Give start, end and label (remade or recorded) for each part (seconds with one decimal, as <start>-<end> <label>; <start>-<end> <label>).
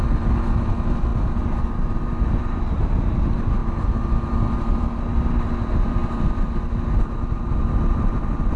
0.0-8.6 recorded